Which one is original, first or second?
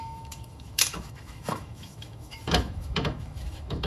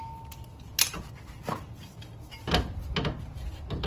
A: second